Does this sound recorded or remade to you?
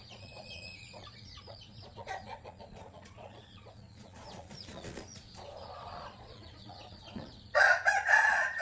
remade